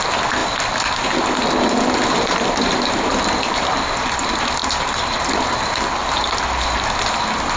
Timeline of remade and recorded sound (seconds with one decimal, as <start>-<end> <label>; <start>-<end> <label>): 0.0-7.6 recorded